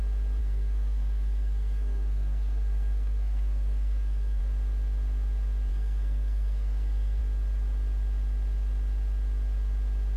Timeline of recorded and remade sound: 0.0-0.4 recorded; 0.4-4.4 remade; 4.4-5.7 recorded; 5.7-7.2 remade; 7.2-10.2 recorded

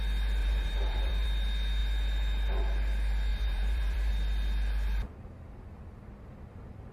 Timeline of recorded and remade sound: 0.0-0.4 recorded; 0.4-1.1 remade; 1.1-3.3 recorded; 3.3-4.1 remade; 4.1-6.9 recorded